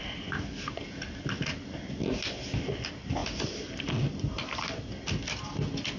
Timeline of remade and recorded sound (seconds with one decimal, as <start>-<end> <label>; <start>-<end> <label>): 0.0-6.0 recorded